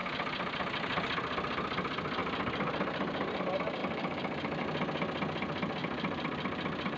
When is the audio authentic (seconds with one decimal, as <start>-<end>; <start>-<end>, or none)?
0.0-2.2; 3.4-3.8; 4.6-5.8